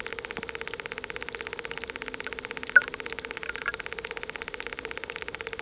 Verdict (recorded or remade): recorded